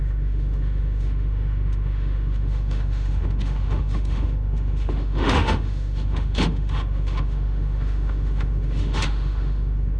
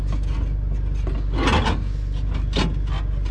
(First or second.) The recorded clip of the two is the second